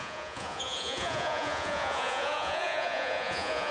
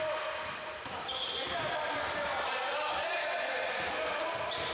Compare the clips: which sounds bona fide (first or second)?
second